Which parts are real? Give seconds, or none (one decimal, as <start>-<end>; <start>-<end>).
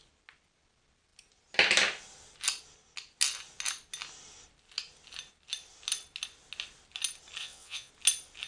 0.0-7.4; 7.9-8.5